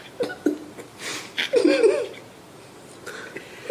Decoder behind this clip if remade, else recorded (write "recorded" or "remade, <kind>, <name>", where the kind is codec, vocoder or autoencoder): recorded